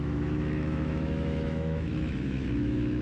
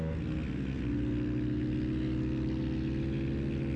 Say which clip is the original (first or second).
second